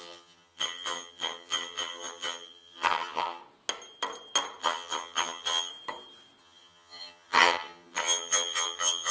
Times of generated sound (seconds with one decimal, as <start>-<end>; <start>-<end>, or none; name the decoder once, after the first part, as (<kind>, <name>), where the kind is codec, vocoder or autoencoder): 0.0-3.4 (vocoder, HiFi-GAN); 4.6-5.7; 6.4-9.1